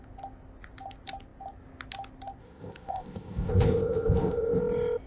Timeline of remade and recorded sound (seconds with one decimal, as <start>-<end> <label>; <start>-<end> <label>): 0.0-2.4 recorded; 2.4-4.6 remade; 4.6-5.1 recorded